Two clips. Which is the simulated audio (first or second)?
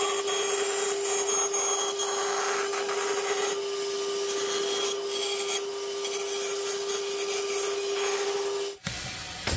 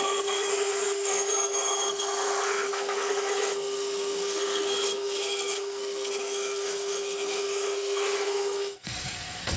second